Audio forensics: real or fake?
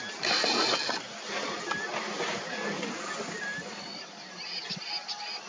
real